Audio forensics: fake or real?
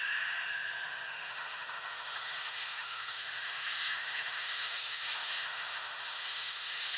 fake